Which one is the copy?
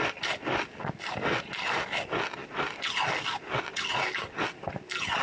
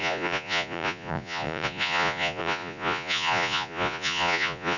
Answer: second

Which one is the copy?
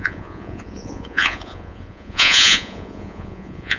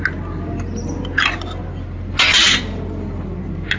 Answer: first